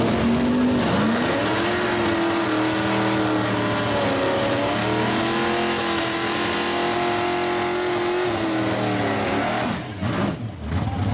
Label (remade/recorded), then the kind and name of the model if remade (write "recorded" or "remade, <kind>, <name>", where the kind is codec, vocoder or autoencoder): recorded